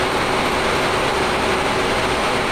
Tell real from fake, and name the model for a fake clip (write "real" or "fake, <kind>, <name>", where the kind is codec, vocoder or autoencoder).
real